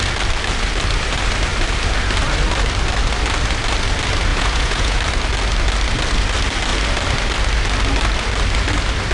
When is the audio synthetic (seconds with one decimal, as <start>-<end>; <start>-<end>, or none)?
4.3-5.0